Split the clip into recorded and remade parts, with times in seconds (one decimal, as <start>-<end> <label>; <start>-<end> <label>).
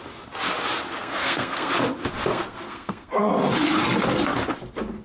0.0-1.0 recorded; 1.0-1.7 remade; 1.7-2.3 recorded; 2.3-3.2 remade; 3.2-5.0 recorded